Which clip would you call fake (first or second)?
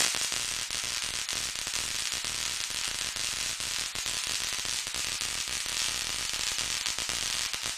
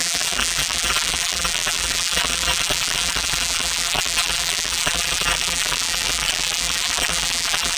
second